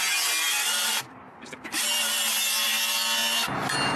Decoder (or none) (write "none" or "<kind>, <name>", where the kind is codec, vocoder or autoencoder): none